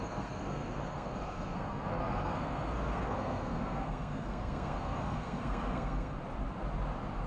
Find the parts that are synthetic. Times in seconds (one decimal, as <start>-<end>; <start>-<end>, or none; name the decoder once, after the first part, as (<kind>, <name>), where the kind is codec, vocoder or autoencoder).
0.0-6.2 (codec, SNAC)